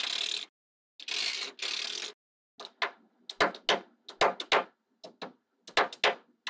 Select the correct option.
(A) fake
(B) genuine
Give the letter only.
B